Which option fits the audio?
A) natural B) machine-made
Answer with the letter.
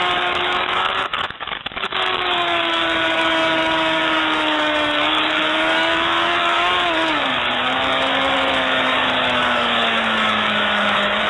B